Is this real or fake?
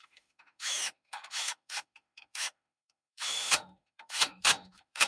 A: fake